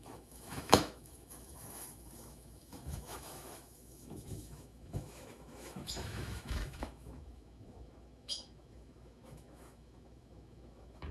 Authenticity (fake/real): fake